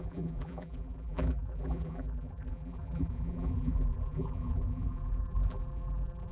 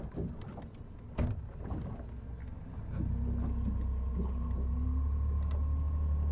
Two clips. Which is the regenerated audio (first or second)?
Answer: first